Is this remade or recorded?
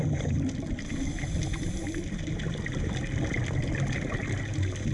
recorded